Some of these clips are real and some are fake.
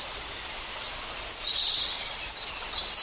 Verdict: real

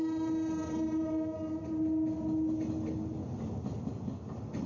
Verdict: real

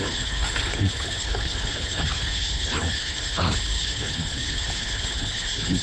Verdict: fake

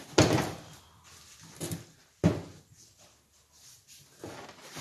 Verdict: real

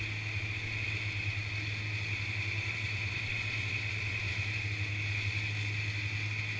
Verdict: real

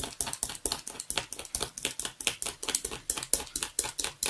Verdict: real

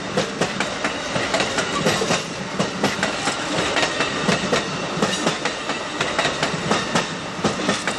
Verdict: real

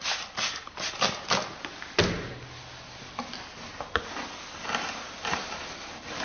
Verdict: real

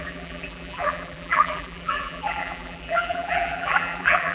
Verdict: fake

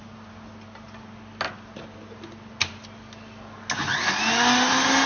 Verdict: real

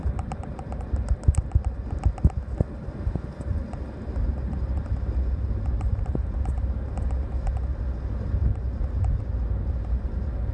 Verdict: real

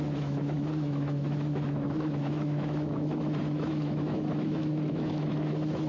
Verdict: fake